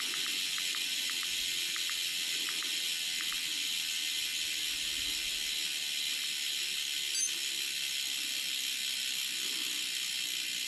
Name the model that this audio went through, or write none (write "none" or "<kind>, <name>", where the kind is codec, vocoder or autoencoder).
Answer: none